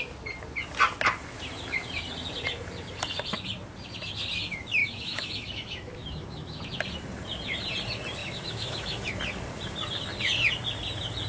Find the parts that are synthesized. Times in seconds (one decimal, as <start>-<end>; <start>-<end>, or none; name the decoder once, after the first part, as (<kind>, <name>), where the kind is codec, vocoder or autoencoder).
4.8-6.6 (autoencoder, DAC-VAE); 8.2-9.1